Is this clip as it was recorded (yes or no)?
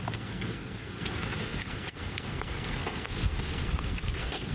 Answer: no